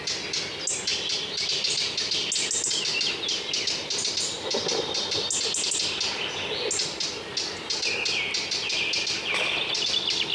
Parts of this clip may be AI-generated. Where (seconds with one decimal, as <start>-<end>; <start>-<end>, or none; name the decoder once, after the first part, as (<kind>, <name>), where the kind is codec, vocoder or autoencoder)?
none